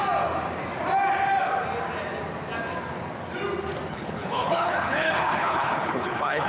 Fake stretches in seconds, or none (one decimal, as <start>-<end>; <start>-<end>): 3.9-6.5